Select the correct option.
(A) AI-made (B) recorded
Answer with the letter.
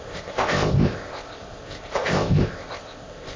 A